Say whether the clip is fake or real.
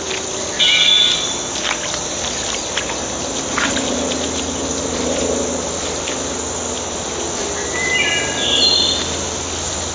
real